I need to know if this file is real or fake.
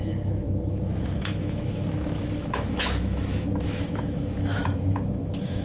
fake